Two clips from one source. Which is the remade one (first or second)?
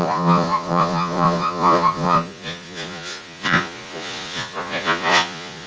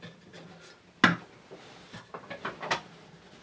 first